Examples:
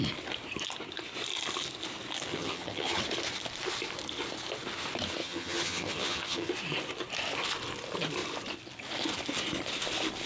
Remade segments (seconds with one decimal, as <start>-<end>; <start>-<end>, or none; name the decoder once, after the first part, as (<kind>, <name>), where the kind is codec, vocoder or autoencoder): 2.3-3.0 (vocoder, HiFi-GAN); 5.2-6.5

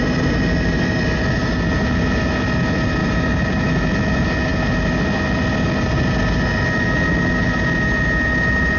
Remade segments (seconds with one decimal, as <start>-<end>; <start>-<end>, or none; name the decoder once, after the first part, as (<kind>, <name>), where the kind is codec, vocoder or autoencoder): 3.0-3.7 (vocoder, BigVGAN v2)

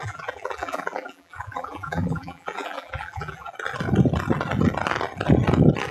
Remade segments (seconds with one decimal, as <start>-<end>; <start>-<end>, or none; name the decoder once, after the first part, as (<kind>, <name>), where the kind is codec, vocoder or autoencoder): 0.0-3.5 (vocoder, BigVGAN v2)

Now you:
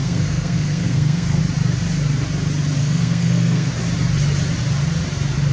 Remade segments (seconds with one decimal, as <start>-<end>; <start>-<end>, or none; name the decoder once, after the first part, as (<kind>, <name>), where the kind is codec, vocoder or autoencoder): 0.0-1.4 (codec, SNAC); 2.8-3.7